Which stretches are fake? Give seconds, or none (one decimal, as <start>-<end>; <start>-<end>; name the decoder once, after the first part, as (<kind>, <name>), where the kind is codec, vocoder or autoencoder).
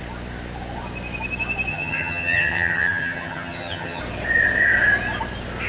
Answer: 1.7-4.0 (vocoder, HiFi-GAN)